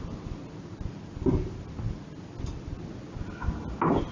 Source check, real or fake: real